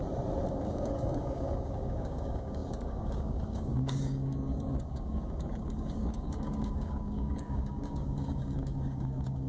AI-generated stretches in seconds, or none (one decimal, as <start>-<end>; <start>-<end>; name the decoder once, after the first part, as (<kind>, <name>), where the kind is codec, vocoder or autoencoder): 0.5-9.5 (codec, DAC)